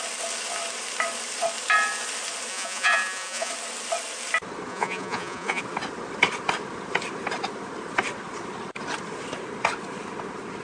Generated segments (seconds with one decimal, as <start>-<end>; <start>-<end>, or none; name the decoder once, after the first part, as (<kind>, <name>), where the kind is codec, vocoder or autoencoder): 2.5-3.5 (vocoder, Vocos); 4.7-5.6